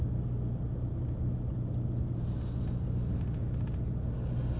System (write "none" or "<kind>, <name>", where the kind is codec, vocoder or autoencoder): none